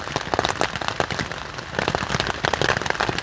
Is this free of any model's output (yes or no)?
yes